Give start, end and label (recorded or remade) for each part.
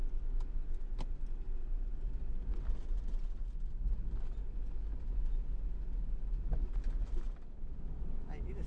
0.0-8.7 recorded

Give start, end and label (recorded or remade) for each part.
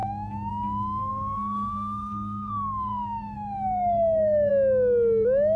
0.0-1.1 recorded; 1.1-4.5 remade; 4.5-5.6 recorded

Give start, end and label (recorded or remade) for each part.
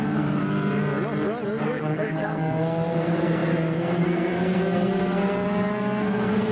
0.0-0.4 remade; 0.4-1.6 recorded; 1.6-6.5 remade